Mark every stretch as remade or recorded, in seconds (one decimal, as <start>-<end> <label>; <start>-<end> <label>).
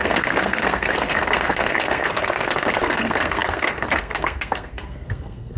0.0-5.6 remade